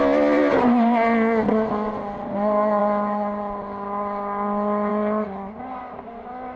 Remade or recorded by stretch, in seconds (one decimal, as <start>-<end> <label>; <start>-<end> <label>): 0.0-6.6 recorded